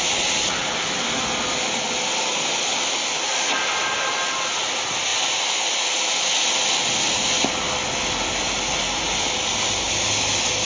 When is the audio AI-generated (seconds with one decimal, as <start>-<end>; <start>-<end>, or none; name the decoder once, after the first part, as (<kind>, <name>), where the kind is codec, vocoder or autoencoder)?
none